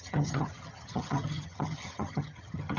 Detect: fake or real fake